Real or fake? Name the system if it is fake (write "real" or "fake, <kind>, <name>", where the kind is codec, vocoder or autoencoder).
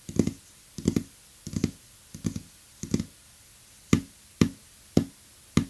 real